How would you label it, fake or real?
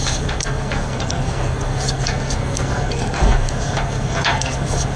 fake